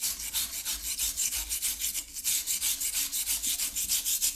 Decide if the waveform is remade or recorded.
recorded